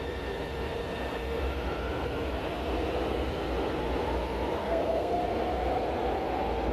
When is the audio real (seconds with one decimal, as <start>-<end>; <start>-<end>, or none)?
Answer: 0.0-4.6; 5.2-6.7